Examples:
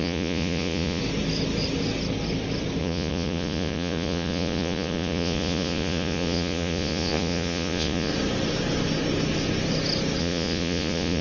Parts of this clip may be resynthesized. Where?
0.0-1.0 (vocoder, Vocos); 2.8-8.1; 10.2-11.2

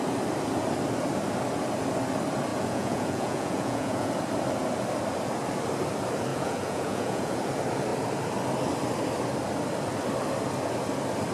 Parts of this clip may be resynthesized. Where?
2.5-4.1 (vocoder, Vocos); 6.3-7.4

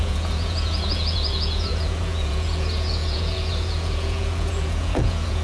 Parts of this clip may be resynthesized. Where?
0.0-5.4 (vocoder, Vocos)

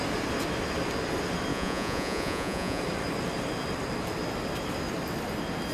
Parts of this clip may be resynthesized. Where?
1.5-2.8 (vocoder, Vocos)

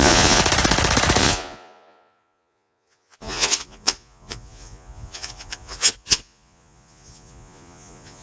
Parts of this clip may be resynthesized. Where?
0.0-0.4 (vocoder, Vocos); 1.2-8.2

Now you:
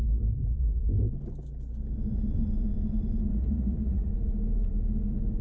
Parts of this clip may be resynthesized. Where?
3.3-4.1 (vocoder, Vocos)